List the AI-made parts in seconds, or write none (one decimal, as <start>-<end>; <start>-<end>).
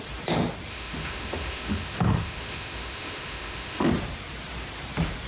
0.7-3.9